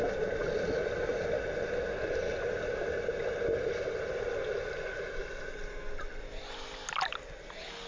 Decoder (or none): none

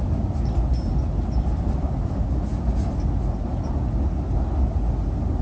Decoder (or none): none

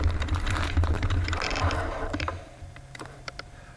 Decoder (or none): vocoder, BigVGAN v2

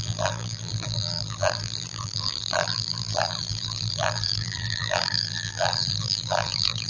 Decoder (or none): vocoder, BigVGAN v2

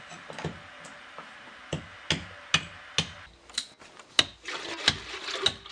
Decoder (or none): none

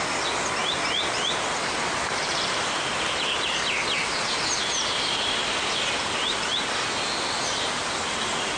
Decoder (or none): none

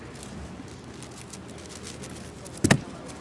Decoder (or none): none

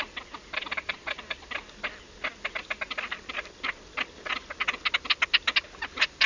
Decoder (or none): none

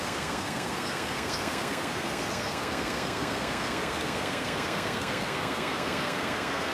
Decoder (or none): codec, SNAC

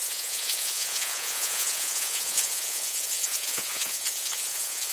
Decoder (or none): vocoder, Vocos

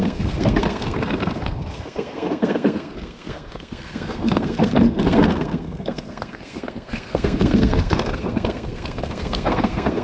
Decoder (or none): codec, SNAC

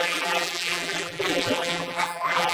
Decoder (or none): vocoder, BigVGAN v2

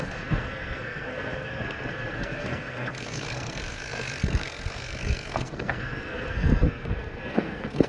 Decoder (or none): codec, SNAC